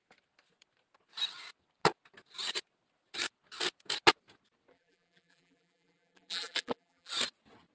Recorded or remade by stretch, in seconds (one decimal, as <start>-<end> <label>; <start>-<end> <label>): 0.0-4.7 recorded; 4.7-7.1 remade; 7.1-7.7 recorded